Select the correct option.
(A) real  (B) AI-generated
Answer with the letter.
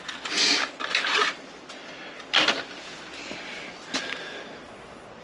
A